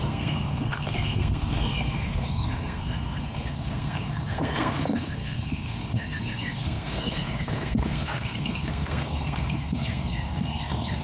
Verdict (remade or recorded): remade